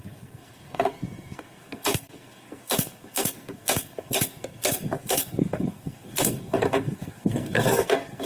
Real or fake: fake